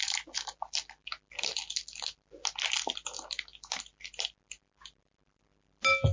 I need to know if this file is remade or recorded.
recorded